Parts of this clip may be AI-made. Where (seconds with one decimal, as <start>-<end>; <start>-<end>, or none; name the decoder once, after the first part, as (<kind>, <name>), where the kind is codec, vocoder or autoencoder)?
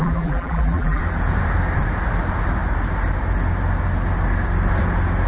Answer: 0.0-1.0 (vocoder, BigVGAN v2)